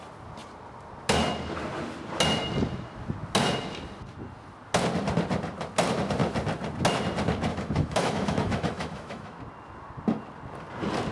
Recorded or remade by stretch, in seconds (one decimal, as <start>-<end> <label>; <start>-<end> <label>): 0.0-7.5 recorded; 7.5-9.4 remade; 9.4-11.1 recorded